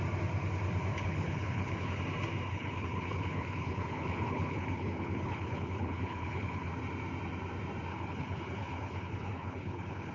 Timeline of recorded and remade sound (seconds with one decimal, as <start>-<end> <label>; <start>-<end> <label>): 0.0-0.9 recorded; 0.9-2.0 remade; 2.0-2.5 recorded; 2.5-6.7 remade; 6.7-7.9 recorded; 7.9-10.1 remade